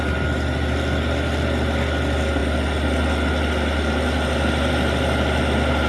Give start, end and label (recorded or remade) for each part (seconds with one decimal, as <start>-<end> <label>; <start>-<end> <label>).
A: 0.0-5.9 recorded